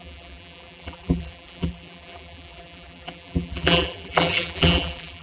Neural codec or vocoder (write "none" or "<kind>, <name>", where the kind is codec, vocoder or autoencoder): vocoder, BigVGAN v2